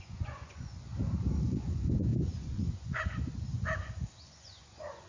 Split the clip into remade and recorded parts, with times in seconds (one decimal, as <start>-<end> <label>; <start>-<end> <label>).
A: 0.0-0.9 remade; 0.9-1.4 recorded; 1.4-5.1 remade